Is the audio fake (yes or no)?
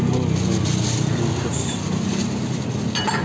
no